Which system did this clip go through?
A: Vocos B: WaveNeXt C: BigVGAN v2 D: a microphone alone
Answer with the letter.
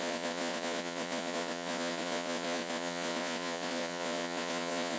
A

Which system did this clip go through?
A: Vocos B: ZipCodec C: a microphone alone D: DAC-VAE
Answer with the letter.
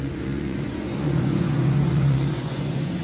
A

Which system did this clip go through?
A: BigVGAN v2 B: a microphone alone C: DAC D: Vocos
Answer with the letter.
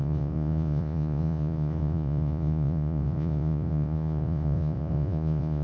D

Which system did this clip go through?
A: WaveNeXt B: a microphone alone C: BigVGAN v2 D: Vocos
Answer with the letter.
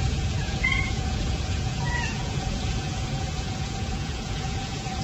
D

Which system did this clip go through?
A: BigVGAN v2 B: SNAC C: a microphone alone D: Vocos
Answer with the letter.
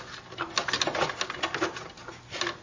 C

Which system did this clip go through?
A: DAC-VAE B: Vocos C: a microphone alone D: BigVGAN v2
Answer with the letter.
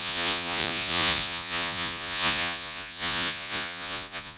B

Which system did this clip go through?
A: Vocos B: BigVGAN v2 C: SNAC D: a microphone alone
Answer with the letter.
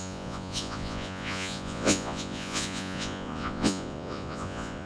A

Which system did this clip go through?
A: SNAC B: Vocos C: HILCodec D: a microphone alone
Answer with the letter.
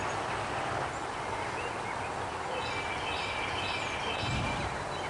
D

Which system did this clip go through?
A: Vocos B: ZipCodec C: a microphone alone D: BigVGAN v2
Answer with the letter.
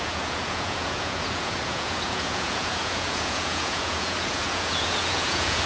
A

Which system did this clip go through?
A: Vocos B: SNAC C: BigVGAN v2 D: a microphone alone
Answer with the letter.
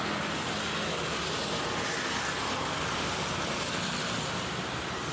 D